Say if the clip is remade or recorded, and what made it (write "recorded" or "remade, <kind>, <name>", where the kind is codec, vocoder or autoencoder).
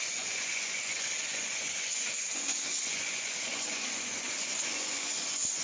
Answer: remade, vocoder, Vocos